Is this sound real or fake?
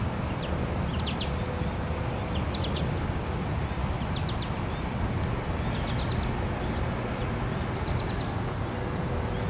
real